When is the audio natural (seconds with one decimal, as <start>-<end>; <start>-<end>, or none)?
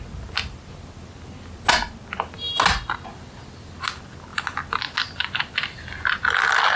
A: 0.0-6.8